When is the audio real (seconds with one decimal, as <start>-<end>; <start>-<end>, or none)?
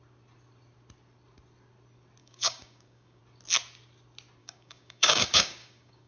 0.0-2.2; 3.2-4.4